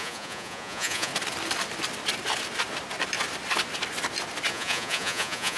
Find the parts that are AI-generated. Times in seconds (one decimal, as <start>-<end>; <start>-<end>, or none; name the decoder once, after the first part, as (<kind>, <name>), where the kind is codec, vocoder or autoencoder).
0.0-1.1 (vocoder, Vocos); 4.5-5.6